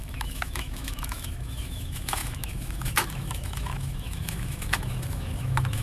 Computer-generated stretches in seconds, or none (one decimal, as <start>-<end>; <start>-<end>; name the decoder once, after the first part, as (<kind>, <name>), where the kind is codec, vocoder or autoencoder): 0.0-5.8 (autoencoder, DAC-VAE)